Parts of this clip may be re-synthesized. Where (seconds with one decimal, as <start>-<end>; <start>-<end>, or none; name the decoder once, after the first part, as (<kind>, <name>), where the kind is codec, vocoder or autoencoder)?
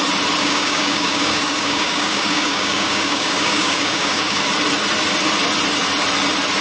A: 0.4-4.4 (codec, DAC)